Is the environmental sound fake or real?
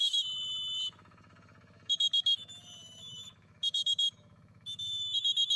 fake